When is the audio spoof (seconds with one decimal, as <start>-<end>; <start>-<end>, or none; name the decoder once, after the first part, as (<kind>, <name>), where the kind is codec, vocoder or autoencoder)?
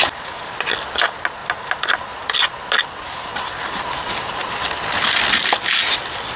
none